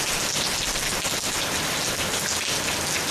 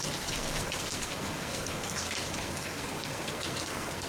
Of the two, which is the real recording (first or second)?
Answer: first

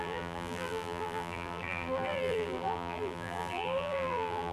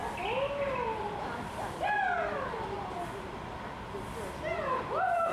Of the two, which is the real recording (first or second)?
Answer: second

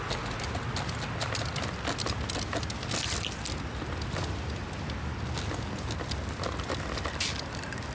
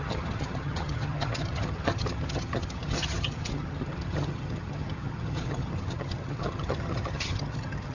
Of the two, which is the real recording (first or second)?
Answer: first